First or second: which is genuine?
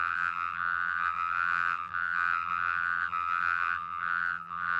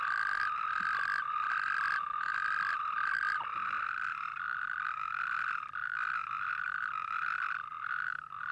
second